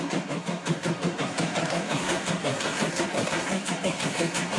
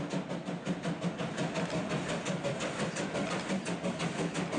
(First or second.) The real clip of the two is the second